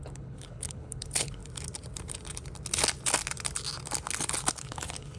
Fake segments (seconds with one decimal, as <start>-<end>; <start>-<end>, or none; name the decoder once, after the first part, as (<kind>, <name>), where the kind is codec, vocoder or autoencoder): 0.0-1.4 (codec, HILCodec); 4.5-5.2